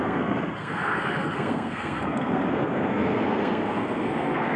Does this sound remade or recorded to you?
remade